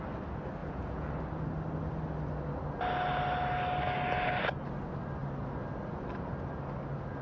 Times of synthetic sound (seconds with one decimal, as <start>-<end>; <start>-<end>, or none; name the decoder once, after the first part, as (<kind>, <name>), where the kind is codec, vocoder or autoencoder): 0.6-1.1 (vocoder, Vocos)

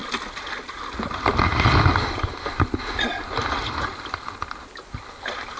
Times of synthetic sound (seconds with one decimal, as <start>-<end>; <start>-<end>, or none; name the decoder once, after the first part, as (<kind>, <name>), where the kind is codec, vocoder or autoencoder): none

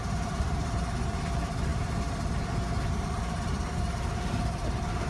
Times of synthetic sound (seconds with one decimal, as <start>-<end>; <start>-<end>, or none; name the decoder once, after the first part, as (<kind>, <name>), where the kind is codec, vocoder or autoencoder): none

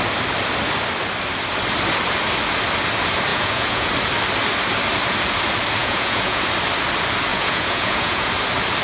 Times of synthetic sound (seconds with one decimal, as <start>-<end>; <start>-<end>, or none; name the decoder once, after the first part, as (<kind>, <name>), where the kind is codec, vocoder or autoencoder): 3.3-3.9 (vocoder, Vocos); 5.8-6.4; 7.3-8.3

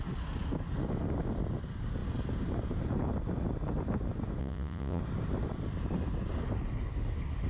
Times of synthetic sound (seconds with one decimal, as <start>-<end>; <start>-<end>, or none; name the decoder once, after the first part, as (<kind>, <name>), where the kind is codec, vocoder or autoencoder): 4.4-5.0 (vocoder, Vocos)

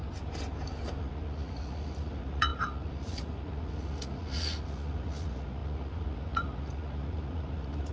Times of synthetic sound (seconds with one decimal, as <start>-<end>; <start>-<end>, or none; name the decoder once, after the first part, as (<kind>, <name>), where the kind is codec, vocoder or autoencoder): 1.0-7.9 (vocoder, Vocos)

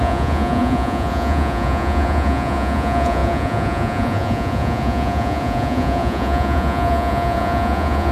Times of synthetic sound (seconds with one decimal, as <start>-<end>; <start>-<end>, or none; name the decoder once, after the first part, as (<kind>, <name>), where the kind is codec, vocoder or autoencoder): 0.0-8.1 (vocoder, Vocos)

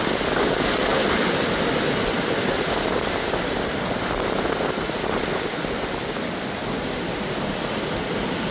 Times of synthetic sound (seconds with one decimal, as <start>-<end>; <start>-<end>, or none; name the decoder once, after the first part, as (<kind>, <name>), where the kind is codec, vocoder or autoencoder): none